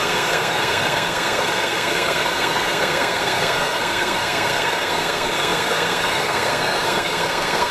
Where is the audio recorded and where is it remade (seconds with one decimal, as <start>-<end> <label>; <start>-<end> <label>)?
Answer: 0.0-7.7 remade